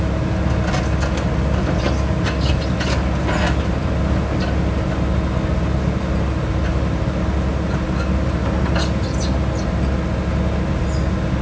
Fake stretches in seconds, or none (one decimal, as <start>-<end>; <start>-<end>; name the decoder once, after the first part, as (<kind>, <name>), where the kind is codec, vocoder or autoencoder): none